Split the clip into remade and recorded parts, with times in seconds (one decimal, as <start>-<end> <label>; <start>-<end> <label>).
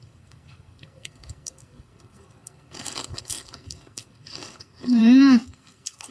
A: 0.0-6.1 remade